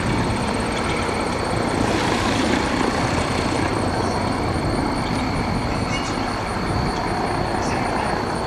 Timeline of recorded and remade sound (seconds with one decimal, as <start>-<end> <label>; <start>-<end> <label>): 0.0-8.5 recorded